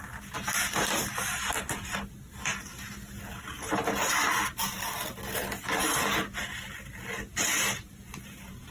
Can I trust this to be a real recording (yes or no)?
yes